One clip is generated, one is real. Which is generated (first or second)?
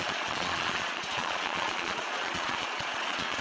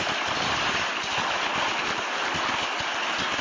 first